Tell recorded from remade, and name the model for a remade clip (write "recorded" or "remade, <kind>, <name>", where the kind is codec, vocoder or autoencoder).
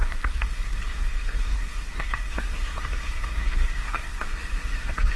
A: remade, codec, SNAC